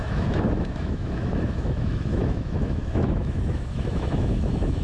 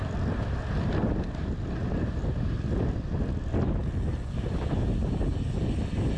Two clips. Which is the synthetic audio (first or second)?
first